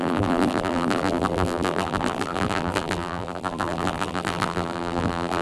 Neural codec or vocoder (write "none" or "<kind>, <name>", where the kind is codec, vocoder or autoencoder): vocoder, BigVGAN v2